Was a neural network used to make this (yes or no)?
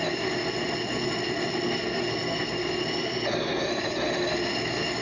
no